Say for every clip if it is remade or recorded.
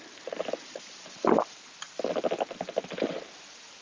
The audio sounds recorded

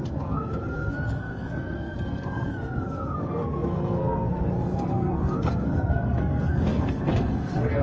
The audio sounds remade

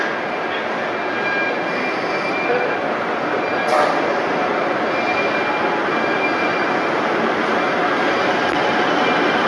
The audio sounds recorded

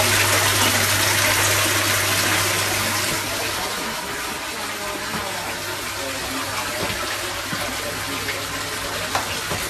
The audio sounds recorded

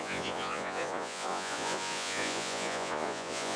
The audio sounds remade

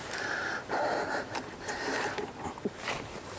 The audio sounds remade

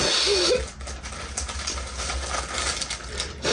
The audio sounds recorded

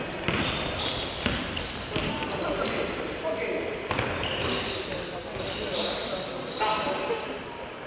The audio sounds recorded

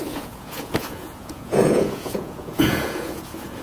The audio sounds remade